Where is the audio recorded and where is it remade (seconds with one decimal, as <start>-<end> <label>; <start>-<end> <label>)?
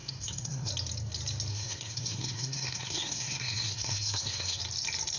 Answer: 0.0-0.7 remade; 0.7-1.5 recorded; 1.5-4.6 remade; 4.6-5.2 recorded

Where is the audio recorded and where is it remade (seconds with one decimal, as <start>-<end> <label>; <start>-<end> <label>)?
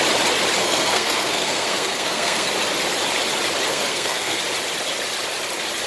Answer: 0.0-0.6 recorded; 0.6-2.5 remade; 2.5-3.7 recorded; 3.7-4.4 remade; 4.4-5.9 recorded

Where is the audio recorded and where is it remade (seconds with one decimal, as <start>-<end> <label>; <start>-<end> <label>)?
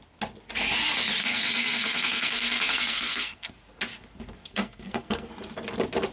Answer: 0.0-1.2 recorded; 1.2-3.5 remade; 3.5-4.4 recorded; 4.4-5.3 remade; 5.3-6.1 recorded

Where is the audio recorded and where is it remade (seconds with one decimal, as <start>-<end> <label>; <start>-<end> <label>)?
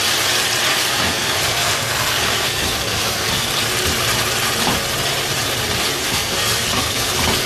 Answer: 0.0-0.7 recorded; 0.7-3.5 remade; 3.5-5.9 recorded; 5.9-7.1 remade; 7.1-7.5 recorded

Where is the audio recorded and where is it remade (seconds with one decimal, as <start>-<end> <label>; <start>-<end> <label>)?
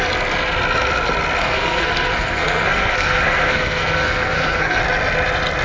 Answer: 0.0-1.4 recorded; 1.4-4.8 remade; 4.8-5.6 recorded